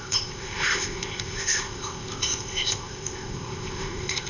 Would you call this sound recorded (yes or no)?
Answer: no